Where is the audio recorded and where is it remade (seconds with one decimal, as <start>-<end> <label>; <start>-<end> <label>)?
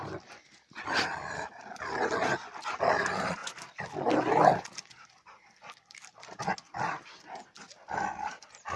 0.0-8.8 recorded